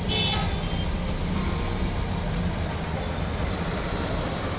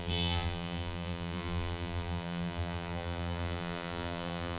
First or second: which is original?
first